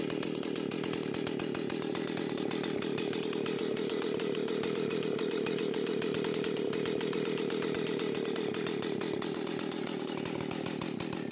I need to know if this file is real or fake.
real